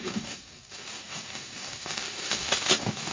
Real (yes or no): no